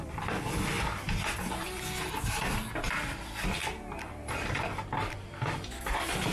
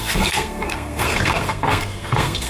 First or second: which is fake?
second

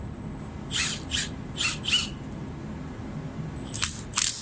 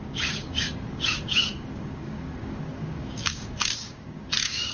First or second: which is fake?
second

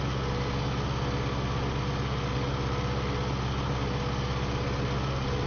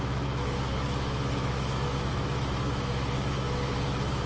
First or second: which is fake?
second